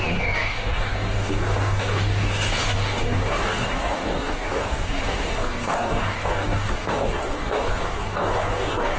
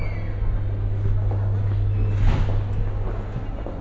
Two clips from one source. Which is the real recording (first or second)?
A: second